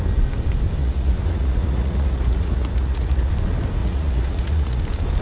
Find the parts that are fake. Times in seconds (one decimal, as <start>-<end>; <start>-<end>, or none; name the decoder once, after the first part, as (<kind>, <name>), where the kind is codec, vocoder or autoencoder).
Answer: 0.8-3.3 (vocoder, Vocos); 3.8-4.8